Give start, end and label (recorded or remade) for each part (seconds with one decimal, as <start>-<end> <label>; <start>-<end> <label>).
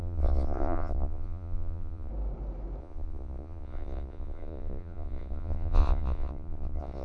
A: 0.0-2.1 remade; 2.1-2.8 recorded; 2.8-7.0 remade